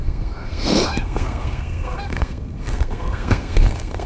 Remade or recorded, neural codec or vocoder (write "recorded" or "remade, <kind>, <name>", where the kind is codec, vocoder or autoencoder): remade, codec, SNAC